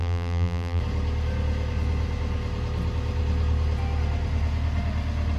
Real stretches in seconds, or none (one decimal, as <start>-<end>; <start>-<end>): 0.8-5.4